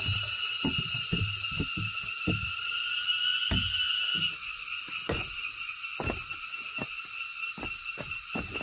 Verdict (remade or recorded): recorded